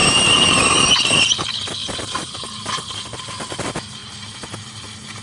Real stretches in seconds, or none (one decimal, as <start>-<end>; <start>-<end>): 0.0-1.8; 2.5-4.0; 4.5-5.2

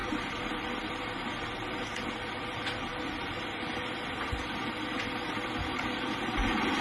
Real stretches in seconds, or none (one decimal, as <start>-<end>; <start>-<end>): 0.0-6.8

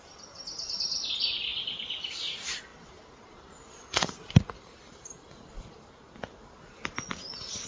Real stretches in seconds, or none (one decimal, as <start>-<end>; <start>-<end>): 0.0-7.7

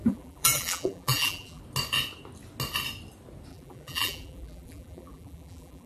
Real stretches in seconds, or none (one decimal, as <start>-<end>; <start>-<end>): 1.6-3.5

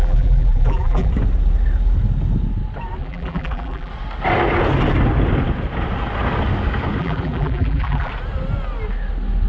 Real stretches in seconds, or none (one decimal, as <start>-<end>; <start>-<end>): 1.1-3.0; 3.9-7.0; 8.1-9.5

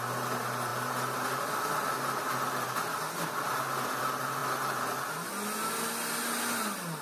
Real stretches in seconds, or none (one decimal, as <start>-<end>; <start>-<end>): 0.0-7.0

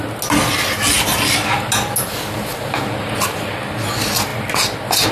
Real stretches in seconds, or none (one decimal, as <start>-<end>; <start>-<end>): 0.0-5.1